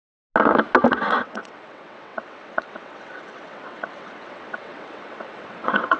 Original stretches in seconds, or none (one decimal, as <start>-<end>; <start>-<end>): 0.0-0.9